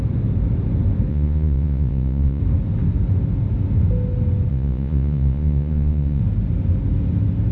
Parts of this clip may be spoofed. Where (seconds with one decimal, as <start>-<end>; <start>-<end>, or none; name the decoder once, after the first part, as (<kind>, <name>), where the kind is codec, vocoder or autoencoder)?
1.1-2.4 (vocoder, Vocos); 4.5-6.2